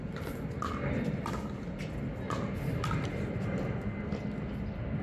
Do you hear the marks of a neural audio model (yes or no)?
no